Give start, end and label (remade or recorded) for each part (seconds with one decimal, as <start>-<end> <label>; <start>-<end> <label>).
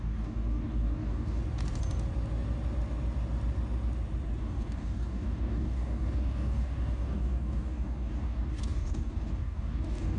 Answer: 0.0-1.4 remade; 1.4-4.4 recorded; 4.4-10.2 remade